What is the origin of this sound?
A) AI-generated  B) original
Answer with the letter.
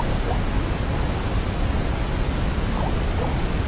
B